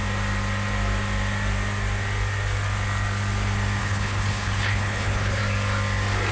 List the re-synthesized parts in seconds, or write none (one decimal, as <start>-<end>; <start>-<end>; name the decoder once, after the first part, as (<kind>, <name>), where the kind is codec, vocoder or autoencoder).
3.8-5.4 (codec, HILCodec)